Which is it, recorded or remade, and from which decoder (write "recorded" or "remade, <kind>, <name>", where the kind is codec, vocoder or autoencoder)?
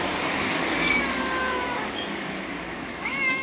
remade, codec, DAC